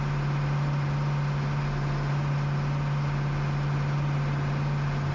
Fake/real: real